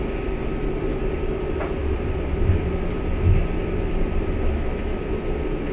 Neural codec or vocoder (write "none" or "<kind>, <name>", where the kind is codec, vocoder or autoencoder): none